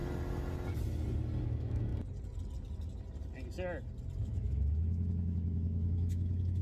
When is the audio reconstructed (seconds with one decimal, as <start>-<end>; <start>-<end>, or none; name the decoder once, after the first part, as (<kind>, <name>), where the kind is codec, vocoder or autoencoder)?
1.4-1.9 (autoencoder, DAC-VAE); 4.2-6.6